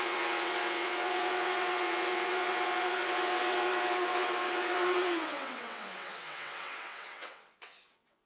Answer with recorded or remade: remade